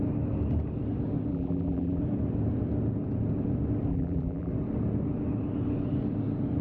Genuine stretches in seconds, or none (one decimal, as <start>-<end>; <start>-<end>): 0.0-1.3; 2.0-3.9; 4.5-6.6